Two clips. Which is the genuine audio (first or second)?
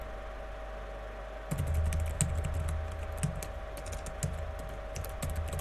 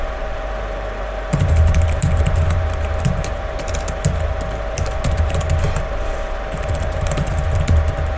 first